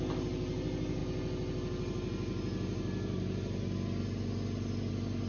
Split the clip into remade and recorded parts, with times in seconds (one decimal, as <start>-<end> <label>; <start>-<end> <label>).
0.0-5.3 recorded